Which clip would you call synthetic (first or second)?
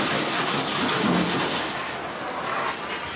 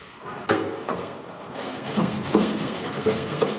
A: second